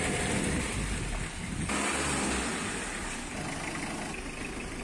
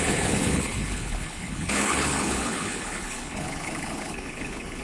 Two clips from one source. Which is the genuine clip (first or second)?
first